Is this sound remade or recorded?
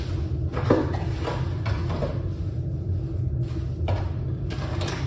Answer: recorded